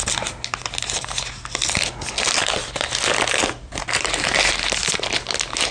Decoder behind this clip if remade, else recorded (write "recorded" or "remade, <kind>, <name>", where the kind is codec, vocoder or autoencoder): recorded